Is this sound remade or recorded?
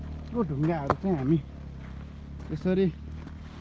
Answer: recorded